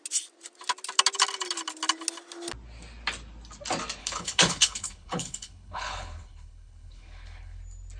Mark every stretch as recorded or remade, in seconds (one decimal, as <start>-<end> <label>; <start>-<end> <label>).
0.0-4.0 recorded; 4.0-7.6 remade; 7.6-8.0 recorded